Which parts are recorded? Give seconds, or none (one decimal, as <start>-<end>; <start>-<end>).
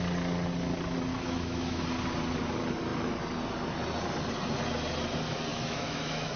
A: 0.0-1.1; 1.8-5.5